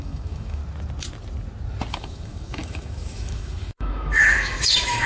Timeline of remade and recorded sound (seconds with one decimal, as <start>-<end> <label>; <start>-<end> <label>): 0.0-0.6 remade; 0.6-1.9 recorded; 1.9-5.1 remade